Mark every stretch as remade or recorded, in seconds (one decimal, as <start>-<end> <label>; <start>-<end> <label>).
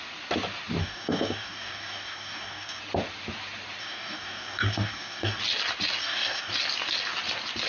0.0-0.8 recorded; 0.8-2.8 remade; 2.8-3.8 recorded; 3.8-5.4 remade; 5.4-6.0 recorded; 6.0-6.5 remade; 6.5-7.7 recorded